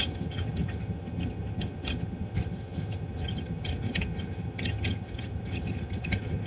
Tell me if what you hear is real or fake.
fake